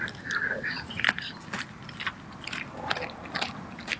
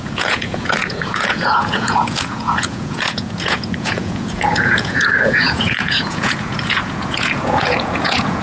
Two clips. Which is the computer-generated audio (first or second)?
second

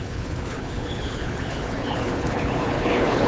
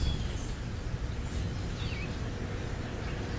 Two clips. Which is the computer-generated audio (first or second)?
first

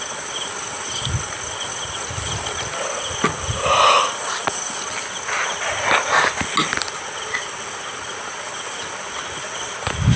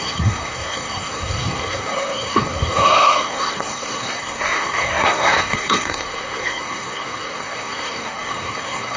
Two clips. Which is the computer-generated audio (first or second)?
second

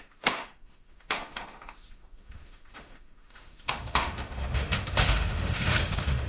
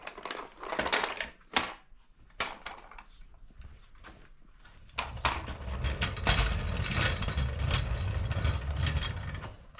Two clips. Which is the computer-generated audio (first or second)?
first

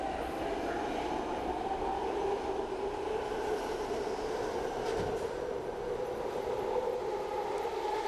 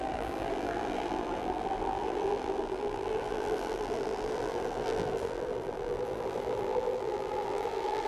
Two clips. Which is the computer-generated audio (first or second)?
second